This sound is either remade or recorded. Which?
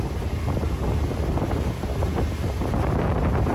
recorded